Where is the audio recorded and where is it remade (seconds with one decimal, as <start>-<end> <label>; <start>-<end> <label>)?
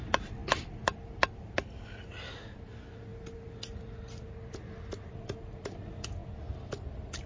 0.0-7.3 recorded